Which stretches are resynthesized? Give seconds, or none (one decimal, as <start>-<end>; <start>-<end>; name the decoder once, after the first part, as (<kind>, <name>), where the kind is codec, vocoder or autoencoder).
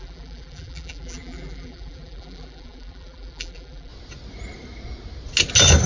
0.0-3.9 (vocoder, BigVGAN v2)